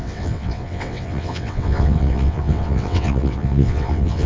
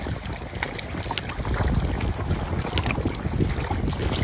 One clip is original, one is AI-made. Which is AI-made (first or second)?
first